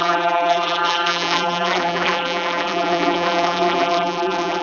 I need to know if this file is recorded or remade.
remade